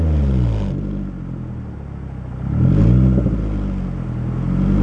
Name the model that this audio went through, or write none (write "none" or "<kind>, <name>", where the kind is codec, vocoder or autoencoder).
none